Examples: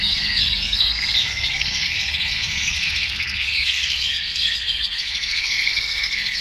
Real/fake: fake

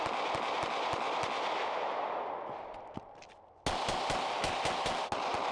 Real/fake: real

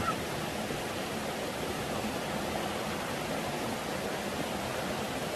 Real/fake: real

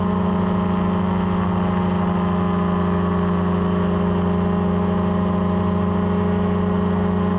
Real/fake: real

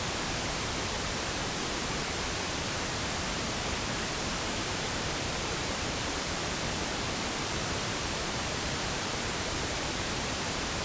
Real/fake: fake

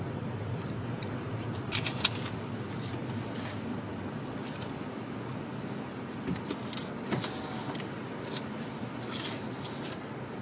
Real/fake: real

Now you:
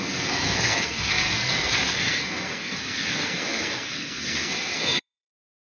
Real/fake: fake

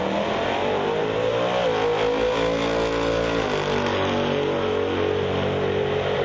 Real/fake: real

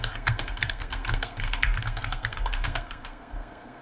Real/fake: fake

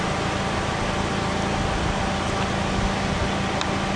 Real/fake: real